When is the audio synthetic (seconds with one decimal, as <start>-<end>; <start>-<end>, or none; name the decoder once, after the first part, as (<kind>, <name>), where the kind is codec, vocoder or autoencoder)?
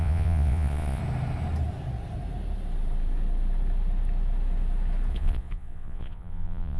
0.0-1.0 (vocoder, Vocos); 5.1-6.8